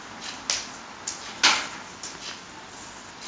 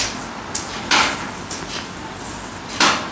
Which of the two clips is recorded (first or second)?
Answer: first